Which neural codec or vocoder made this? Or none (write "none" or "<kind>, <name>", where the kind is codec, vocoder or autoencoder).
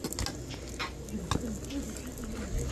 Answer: none